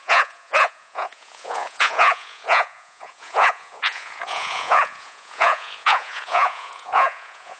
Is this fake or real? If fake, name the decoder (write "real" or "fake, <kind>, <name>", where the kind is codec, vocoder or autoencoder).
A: fake, vocoder, Vocos